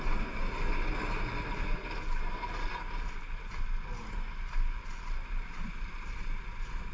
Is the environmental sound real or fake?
real